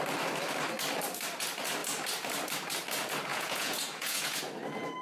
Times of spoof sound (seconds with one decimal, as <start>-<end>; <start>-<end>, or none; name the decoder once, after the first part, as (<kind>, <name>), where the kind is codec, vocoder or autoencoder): 3.3-4.4 (vocoder, Vocos)